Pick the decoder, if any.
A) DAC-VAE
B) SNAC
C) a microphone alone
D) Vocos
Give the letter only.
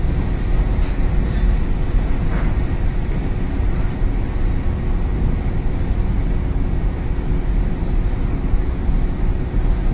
C